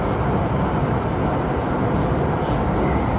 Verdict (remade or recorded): recorded